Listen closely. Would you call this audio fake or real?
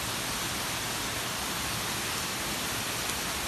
real